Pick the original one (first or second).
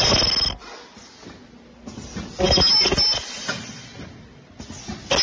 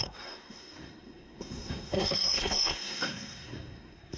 first